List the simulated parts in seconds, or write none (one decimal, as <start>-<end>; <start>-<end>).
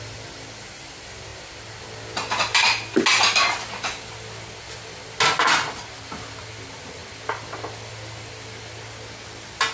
7.0-7.9